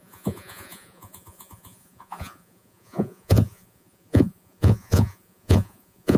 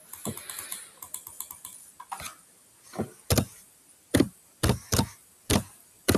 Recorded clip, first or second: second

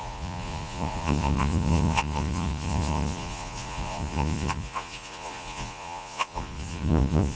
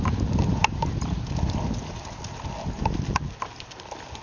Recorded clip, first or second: second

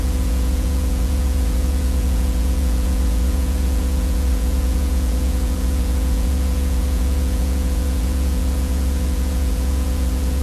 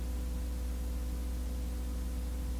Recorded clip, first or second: second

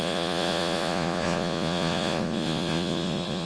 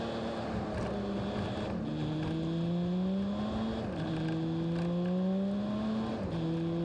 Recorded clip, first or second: second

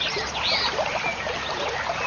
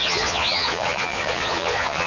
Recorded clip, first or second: first